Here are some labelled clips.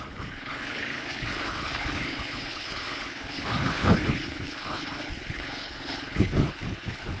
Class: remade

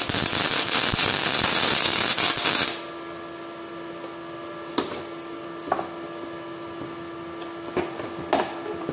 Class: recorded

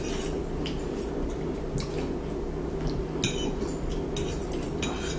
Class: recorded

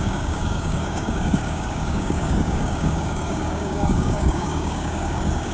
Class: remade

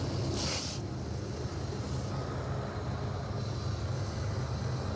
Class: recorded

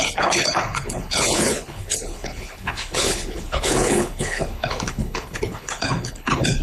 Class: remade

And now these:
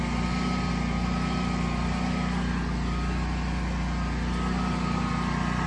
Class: recorded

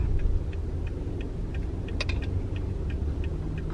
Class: recorded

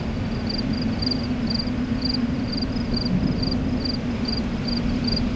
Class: recorded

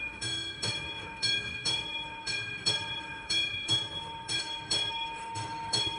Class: remade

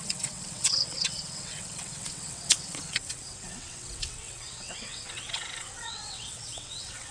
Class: remade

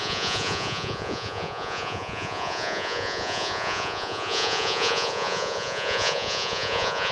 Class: remade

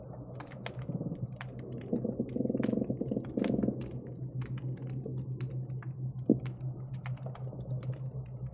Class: recorded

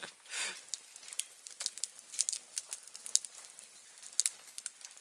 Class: recorded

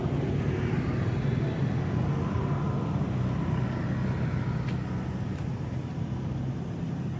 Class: recorded